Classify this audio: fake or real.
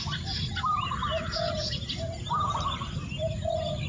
real